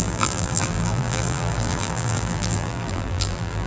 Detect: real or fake fake